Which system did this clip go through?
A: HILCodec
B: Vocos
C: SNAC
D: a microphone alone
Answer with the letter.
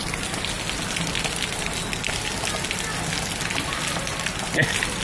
D